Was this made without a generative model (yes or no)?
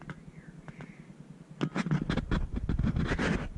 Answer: yes